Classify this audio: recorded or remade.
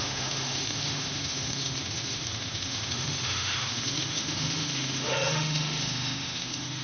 remade